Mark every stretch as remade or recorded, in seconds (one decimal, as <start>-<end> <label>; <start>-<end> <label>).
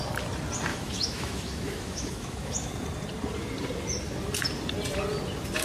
0.0-0.7 recorded; 0.7-2.7 remade; 2.7-5.6 recorded